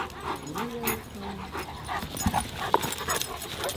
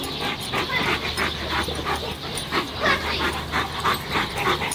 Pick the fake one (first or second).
second